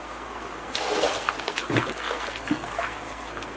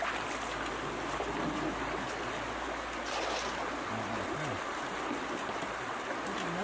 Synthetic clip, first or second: first